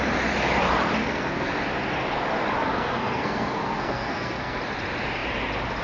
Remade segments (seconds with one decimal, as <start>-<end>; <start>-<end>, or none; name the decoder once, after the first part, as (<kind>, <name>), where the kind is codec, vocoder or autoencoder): 1.0-1.5 (codec, SNAC); 2.7-4.6